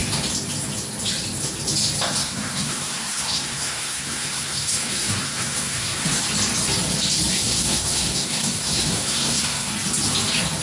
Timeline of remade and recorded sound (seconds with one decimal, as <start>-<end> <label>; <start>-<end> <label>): 0.0-2.2 recorded; 2.2-6.2 remade; 6.2-7.3 recorded; 7.3-9.7 remade; 9.7-10.6 recorded